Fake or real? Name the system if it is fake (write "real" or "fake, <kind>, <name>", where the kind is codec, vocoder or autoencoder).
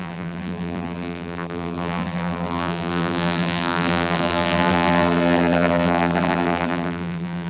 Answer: fake, vocoder, BigVGAN v2